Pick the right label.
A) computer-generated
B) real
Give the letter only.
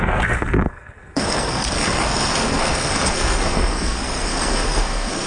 A